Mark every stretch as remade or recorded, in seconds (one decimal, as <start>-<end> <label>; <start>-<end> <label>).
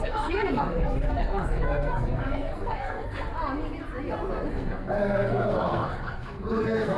0.0-3.3 remade; 3.3-4.5 recorded; 4.5-7.0 remade